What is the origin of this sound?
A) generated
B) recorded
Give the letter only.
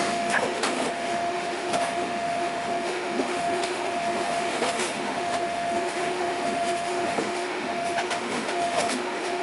A